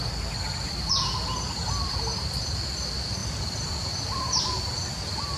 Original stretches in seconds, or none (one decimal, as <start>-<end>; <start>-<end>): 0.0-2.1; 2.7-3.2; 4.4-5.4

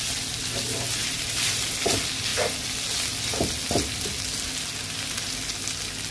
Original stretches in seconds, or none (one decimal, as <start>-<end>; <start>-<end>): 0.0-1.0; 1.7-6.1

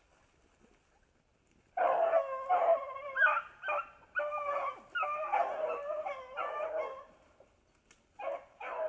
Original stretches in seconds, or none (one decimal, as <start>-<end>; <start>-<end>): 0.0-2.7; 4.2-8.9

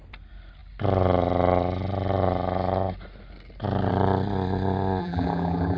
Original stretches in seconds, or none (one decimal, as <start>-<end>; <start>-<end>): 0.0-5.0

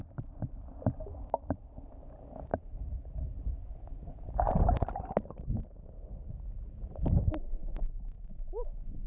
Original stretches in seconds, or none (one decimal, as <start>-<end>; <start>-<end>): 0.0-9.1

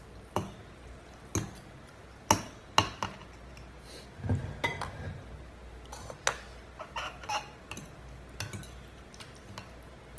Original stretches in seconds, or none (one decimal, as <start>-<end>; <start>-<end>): 0.0-10.2